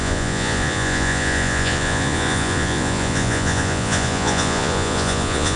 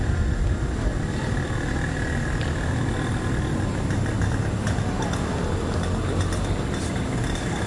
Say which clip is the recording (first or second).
second